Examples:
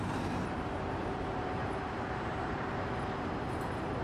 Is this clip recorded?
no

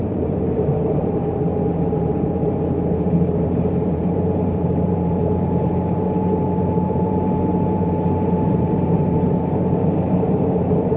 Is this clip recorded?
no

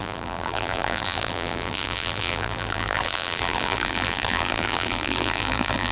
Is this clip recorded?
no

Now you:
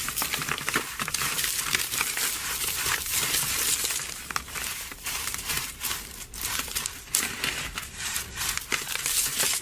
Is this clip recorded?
no